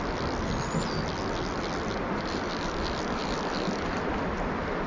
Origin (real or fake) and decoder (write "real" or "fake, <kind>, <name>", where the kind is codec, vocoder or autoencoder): real